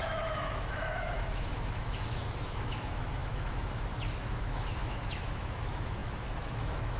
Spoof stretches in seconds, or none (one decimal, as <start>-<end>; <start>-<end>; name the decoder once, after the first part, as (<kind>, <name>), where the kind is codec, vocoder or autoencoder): 0.0-7.0 (autoencoder, DAC-VAE)